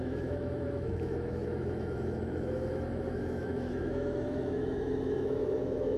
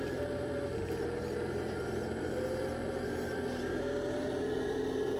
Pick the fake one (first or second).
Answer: first